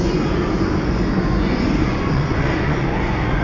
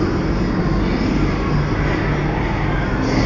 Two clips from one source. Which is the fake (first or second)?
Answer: first